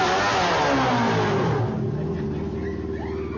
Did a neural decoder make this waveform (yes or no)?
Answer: no